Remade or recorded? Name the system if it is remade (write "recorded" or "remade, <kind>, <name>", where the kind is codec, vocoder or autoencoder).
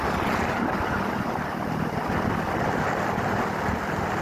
recorded